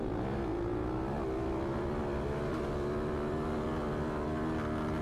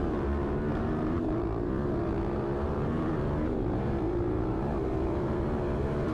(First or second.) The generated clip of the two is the second